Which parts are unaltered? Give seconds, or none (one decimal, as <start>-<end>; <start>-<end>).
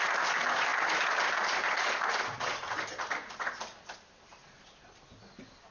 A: 0.0-5.7